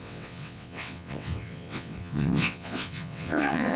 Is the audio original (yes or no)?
no